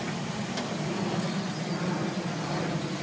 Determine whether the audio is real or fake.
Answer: real